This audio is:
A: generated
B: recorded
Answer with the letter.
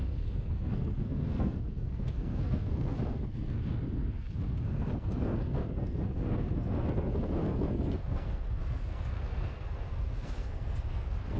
A